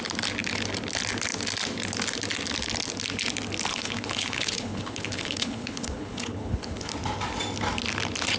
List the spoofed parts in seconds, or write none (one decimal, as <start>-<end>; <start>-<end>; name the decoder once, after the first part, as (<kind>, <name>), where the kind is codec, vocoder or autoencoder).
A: 3.7-6.9 (codec, HILCodec)